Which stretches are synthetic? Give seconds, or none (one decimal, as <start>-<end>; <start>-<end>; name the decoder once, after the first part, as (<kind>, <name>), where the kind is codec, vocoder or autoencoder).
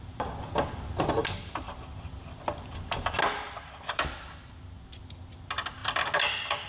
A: 1.2-5.2 (vocoder, BigVGAN v2); 5.8-6.7